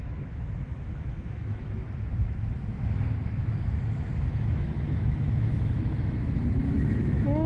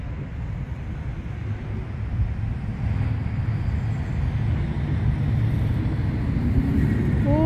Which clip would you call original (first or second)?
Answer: second